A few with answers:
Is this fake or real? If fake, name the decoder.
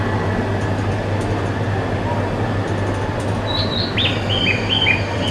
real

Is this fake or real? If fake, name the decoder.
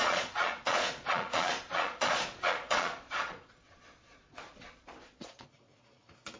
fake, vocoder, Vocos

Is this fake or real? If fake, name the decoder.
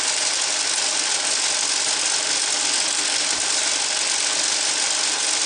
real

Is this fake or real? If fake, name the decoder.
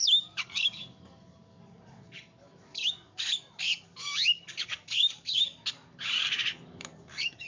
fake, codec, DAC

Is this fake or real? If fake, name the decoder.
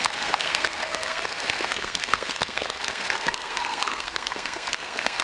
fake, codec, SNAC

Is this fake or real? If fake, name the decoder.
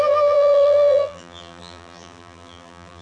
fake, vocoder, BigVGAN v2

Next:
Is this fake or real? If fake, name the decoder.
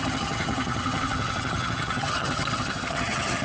fake, vocoder, HiFi-GAN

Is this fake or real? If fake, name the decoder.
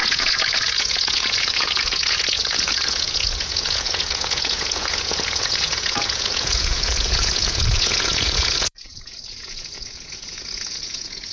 fake, vocoder, Vocos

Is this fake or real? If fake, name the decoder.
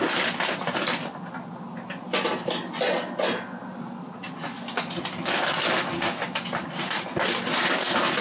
real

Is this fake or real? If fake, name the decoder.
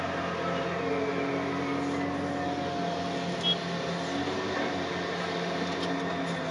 real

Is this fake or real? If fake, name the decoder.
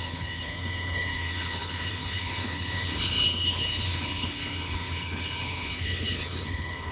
fake, codec, HILCodec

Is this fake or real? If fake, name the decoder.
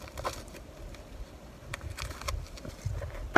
fake, vocoder, BigVGAN v2